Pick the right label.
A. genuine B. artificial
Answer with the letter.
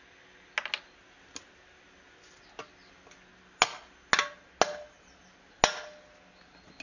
A